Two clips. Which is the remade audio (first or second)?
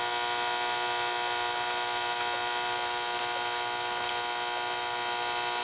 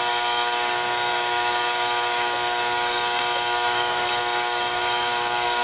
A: second